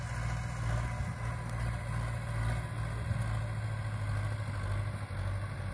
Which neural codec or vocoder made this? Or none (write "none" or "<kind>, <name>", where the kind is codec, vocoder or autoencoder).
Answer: none